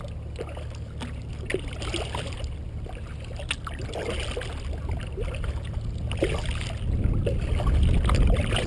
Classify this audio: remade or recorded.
recorded